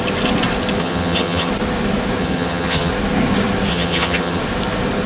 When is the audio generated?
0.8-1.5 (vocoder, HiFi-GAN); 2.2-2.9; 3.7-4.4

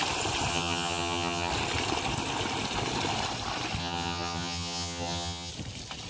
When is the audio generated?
0.5-1.5 (vocoder, HiFi-GAN); 3.8-5.5